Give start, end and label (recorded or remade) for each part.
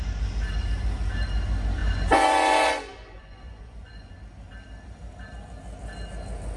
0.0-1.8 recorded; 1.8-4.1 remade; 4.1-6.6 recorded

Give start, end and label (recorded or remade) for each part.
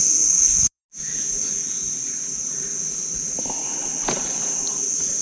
0.0-0.8 remade; 0.8-1.7 recorded; 1.7-3.9 remade; 3.9-4.7 recorded; 4.7-5.2 remade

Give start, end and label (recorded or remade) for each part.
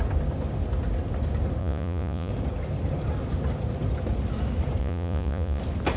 0.0-1.6 recorded; 1.6-2.3 remade; 2.3-4.8 recorded; 4.8-5.6 remade; 5.6-6.0 recorded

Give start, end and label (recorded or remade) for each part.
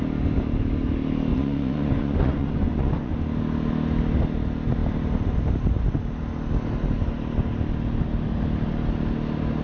0.0-1.3 recorded; 1.3-3.1 remade; 3.1-9.6 recorded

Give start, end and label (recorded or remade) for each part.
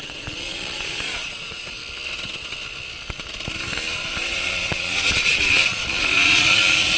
0.0-1.8 remade; 1.8-4.0 recorded; 4.0-7.0 remade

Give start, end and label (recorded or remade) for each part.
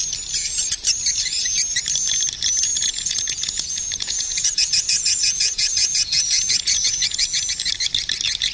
0.0-2.7 recorded; 2.7-7.5 remade; 7.5-8.5 recorded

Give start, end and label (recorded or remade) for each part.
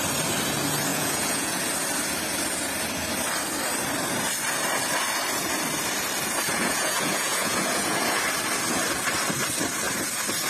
0.0-0.9 recorded; 0.9-1.6 remade; 1.6-6.5 recorded; 6.5-8.2 remade; 8.2-10.5 recorded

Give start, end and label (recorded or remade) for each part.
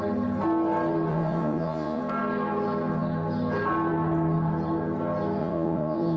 0.0-1.1 recorded; 1.1-2.0 remade; 2.0-5.4 recorded; 5.4-6.2 remade